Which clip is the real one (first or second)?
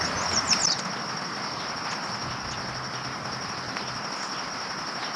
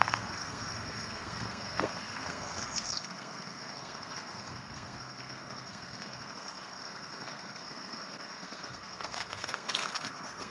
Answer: first